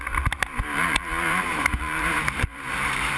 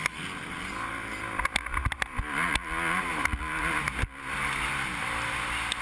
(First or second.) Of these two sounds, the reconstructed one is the first